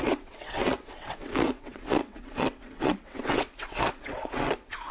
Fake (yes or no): yes